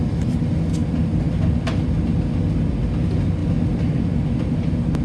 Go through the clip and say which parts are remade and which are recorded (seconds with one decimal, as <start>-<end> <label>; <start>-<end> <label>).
0.0-5.0 recorded